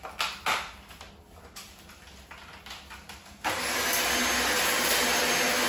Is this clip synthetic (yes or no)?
no